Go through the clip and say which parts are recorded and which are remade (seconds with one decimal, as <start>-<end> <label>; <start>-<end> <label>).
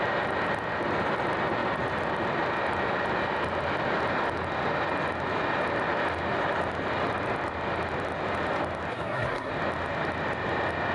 0.0-8.9 recorded; 8.9-9.5 remade; 9.5-10.9 recorded